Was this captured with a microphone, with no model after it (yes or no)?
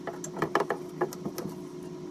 yes